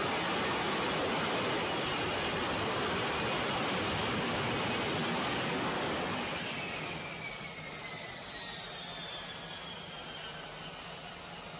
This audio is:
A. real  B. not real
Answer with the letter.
A